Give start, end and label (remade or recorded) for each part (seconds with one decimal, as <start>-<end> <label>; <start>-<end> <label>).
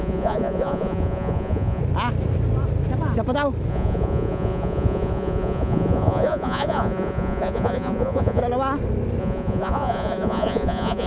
0.0-1.8 remade; 1.8-3.7 recorded; 3.7-8.4 remade; 8.4-9.2 recorded; 9.2-11.1 remade